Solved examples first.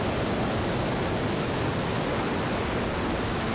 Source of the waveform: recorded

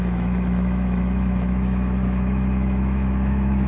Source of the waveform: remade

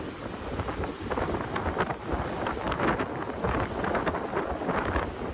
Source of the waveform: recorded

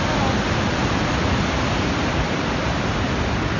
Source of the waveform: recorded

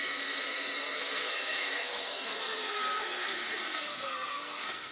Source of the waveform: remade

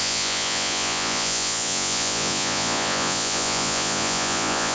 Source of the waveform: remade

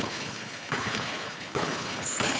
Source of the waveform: remade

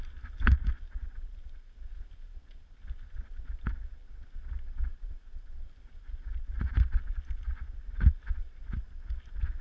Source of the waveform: recorded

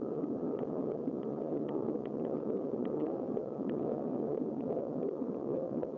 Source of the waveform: remade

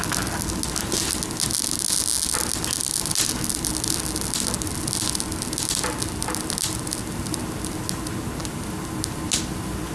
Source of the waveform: recorded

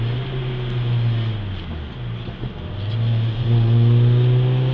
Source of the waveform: recorded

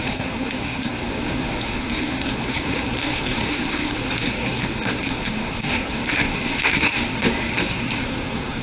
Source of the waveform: remade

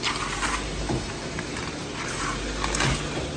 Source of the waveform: recorded